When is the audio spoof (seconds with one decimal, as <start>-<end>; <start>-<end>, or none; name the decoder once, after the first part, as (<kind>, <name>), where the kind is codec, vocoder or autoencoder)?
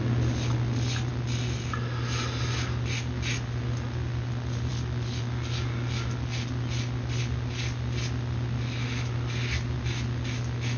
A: none